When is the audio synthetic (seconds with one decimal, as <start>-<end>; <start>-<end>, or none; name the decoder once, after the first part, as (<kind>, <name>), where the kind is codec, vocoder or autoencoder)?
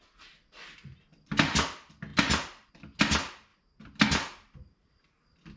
none